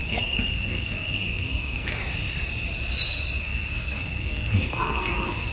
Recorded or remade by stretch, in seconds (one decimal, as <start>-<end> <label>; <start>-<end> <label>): 0.0-2.0 remade; 2.0-3.4 recorded; 3.4-5.5 remade